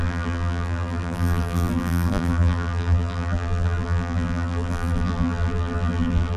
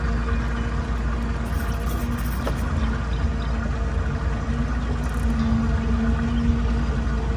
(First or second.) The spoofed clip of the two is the first